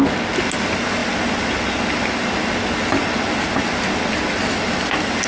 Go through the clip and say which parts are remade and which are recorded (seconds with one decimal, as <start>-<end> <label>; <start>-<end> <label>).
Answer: 0.0-5.3 recorded